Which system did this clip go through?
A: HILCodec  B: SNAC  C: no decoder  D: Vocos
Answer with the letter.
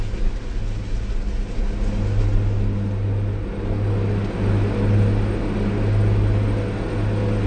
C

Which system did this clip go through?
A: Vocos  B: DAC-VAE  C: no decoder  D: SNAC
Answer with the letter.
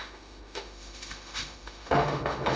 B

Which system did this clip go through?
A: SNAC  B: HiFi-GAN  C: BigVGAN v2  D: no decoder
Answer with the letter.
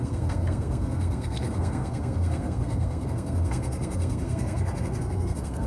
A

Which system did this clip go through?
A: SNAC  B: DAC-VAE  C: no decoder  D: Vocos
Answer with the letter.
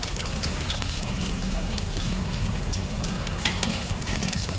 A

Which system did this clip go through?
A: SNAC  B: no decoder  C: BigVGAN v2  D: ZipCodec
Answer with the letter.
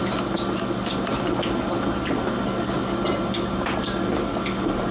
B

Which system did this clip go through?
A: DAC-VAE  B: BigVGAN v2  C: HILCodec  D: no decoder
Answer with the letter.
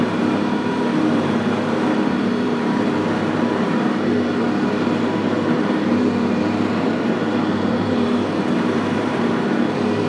B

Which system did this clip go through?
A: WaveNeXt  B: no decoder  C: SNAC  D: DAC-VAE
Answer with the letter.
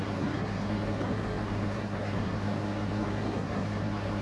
C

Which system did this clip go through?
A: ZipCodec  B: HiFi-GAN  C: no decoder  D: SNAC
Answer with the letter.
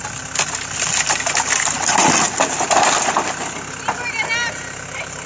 C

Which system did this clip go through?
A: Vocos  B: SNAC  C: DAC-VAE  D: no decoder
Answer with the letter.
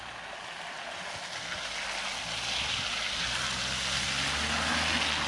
D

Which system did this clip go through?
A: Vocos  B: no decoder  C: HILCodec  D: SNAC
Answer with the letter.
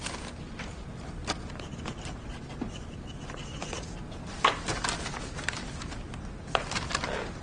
B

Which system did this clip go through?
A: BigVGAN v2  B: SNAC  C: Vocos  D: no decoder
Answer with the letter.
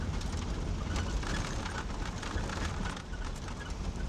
D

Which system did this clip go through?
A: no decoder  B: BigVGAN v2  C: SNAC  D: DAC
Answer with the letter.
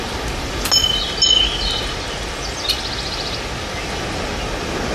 A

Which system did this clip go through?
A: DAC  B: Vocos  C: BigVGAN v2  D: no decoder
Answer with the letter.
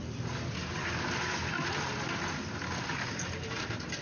D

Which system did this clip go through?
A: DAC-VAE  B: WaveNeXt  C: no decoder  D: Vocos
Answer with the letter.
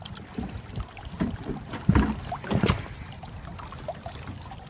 C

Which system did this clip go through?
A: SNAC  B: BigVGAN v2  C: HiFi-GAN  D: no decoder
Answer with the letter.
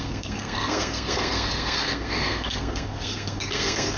A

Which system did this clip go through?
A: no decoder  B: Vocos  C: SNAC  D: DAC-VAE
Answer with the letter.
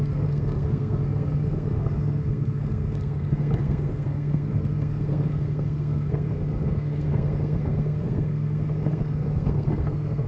C